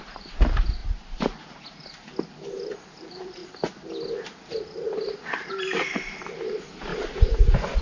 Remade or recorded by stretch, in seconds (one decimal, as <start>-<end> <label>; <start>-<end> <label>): 0.0-0.8 remade; 0.8-3.0 recorded; 3.0-3.4 remade; 3.4-5.5 recorded; 5.5-6.9 remade; 6.9-7.8 recorded